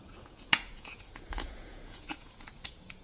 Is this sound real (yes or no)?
no